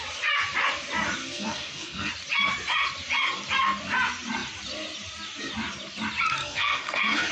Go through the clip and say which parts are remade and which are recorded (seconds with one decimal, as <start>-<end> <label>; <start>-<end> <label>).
0.0-1.2 recorded; 1.2-2.1 remade; 2.1-6.4 recorded; 6.4-7.3 remade